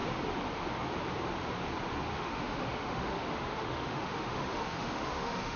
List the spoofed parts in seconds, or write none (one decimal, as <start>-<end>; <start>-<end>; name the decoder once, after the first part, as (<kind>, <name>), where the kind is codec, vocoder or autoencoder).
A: 2.1-5.6 (autoencoder, DAC-VAE)